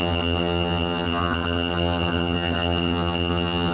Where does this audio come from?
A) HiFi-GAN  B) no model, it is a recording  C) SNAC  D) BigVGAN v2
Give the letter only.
A